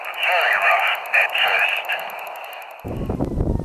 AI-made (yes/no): no